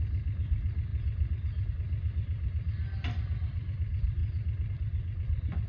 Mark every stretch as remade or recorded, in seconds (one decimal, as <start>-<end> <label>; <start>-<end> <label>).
0.0-5.7 recorded